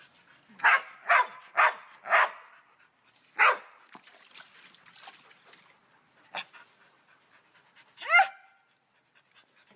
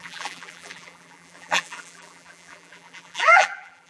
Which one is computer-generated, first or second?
second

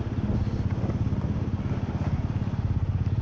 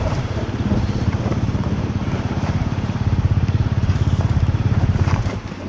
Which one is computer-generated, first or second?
second